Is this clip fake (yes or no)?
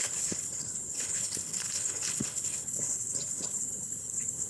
yes